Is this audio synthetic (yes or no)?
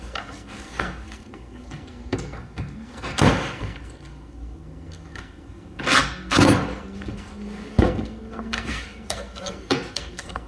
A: yes